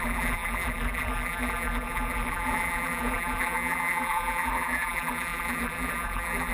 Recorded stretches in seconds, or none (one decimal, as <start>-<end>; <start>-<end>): none